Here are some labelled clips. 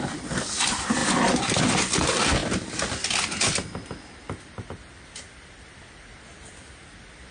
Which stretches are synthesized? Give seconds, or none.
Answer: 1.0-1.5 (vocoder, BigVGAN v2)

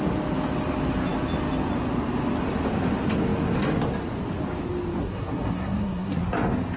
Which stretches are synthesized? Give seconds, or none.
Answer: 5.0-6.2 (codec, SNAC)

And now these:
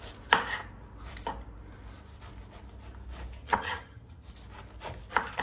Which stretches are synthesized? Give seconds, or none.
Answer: 3.4-4.3 (vocoder, HiFi-GAN)

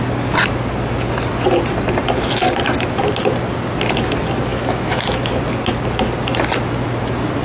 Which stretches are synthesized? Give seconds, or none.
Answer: 4.5-5.3 (autoencoder, DAC-VAE)

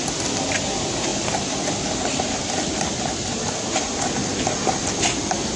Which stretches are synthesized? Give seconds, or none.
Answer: none

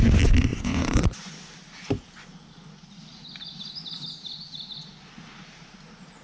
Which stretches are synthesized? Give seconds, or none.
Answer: 0.5-1.3 (vocoder, Vocos)